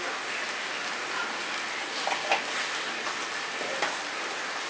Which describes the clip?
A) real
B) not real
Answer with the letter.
A